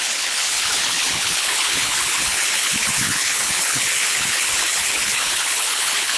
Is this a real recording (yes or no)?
no